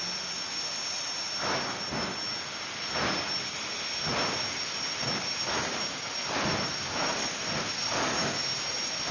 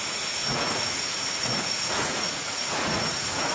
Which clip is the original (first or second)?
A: first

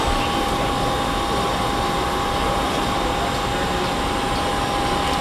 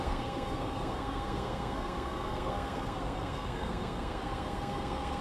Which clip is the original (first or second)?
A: first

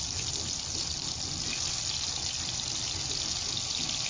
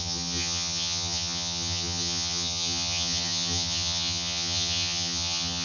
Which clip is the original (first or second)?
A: first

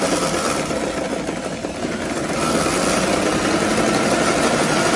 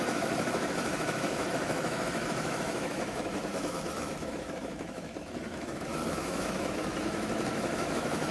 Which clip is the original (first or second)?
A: first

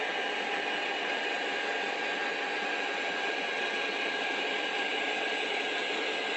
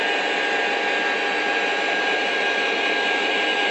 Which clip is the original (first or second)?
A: second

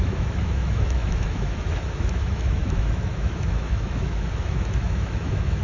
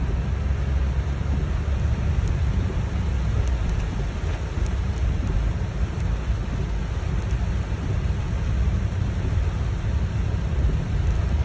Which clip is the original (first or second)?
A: second